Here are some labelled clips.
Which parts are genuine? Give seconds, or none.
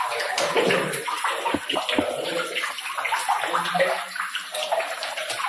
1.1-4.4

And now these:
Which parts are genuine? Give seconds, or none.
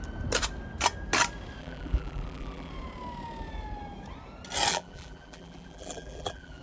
0.0-1.6; 2.7-4.7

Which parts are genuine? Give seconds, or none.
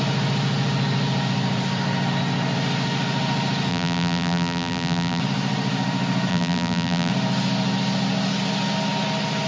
0.0-3.7; 5.2-6.3; 7.1-9.5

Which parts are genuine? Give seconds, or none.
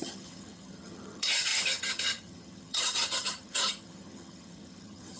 none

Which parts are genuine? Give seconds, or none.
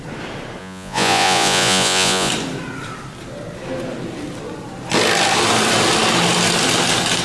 0.0-0.6; 2.3-7.2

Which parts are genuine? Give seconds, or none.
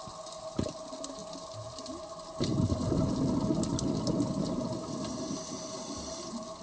0.0-6.6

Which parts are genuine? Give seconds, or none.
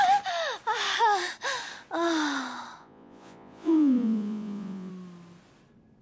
0.0-2.8; 4.9-6.0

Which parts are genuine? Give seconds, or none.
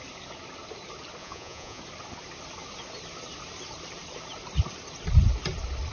0.0-1.2; 1.8-5.9